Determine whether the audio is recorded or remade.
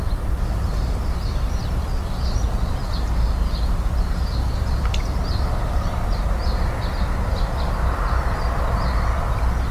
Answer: recorded